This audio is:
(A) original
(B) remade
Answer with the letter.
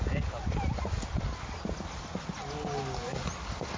A